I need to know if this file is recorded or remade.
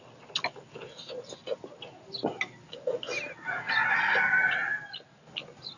recorded